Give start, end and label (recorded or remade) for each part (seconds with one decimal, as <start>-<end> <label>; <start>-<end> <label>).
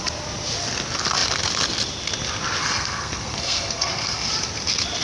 0.0-2.6 recorded; 2.6-4.3 remade; 4.3-5.0 recorded